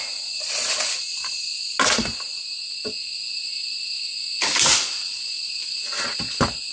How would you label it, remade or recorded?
recorded